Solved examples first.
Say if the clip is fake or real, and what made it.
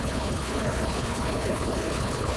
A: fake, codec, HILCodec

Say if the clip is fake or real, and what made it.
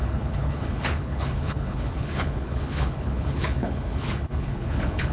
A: fake, codec, HILCodec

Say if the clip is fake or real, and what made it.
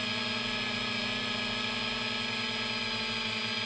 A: real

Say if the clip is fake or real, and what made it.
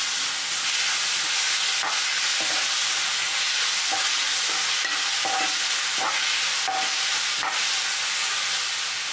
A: real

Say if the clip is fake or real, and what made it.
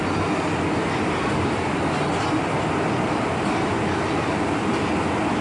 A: real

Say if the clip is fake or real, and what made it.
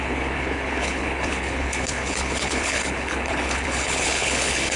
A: fake, codec, HILCodec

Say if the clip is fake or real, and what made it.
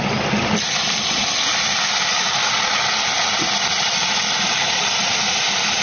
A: real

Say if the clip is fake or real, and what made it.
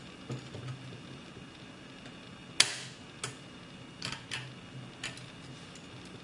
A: real